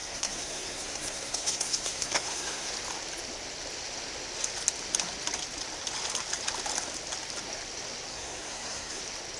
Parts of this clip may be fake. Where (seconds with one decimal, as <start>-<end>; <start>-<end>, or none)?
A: 0.0-2.7; 8.1-9.0